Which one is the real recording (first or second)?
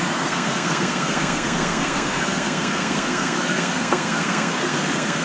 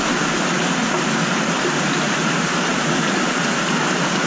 second